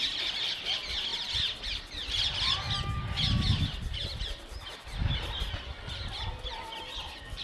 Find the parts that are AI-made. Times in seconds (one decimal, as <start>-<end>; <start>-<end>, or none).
none